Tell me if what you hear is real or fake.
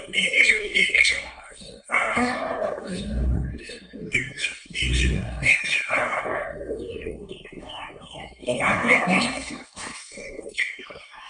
fake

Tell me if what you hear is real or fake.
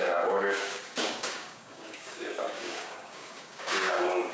fake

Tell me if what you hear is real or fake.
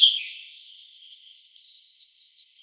fake